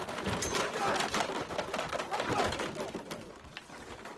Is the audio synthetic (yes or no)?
no